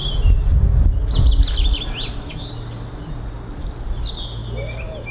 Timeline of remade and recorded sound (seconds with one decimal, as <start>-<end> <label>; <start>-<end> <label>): 0.0-5.1 recorded